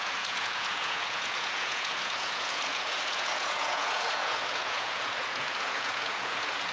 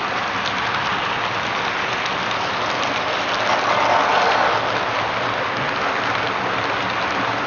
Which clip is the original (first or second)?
second